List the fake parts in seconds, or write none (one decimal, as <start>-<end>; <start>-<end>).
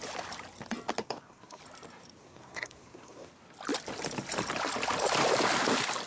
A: 1.0-1.6; 2.2-3.3